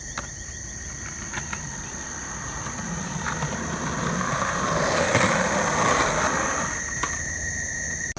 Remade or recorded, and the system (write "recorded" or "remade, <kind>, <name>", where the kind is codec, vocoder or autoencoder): recorded